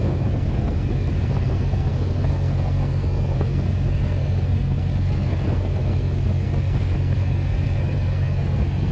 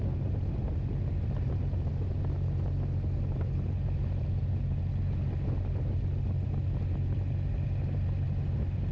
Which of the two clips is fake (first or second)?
first